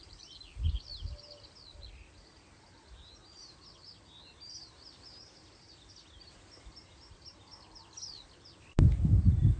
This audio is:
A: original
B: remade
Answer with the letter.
A